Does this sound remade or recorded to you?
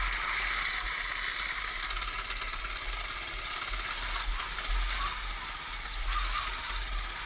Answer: recorded